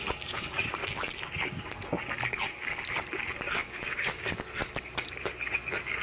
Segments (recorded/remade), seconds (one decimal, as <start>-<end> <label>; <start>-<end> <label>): 0.0-3.6 recorded; 3.6-4.4 remade; 4.4-6.0 recorded